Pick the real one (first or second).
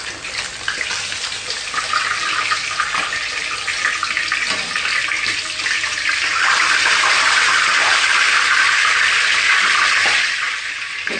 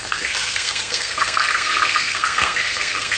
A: first